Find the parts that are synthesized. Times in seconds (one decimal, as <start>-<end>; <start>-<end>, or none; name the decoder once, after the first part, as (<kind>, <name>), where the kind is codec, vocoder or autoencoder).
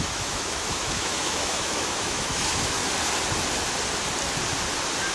0.0-2.8 (autoencoder, DAC-VAE)